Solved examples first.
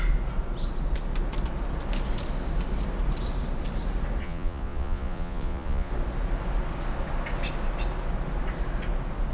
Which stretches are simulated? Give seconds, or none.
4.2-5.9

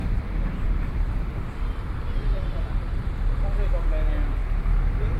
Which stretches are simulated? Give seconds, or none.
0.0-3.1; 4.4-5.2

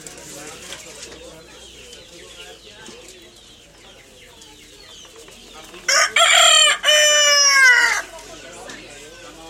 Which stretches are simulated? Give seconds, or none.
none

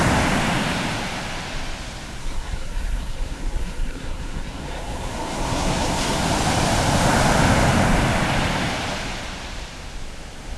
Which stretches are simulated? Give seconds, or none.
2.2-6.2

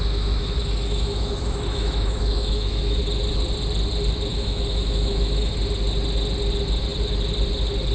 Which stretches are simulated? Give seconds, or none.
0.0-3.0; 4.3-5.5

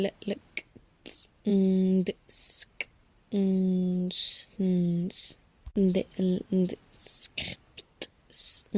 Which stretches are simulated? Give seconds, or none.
none

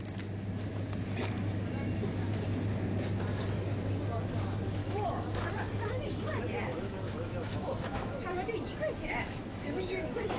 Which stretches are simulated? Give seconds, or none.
4.8-5.5; 6.7-8.1; 9.0-10.4